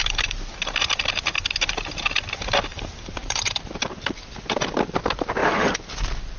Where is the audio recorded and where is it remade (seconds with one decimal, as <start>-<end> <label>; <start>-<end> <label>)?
0.0-2.7 recorded; 2.7-3.5 remade; 3.5-5.4 recorded; 5.4-5.9 remade; 5.9-6.4 recorded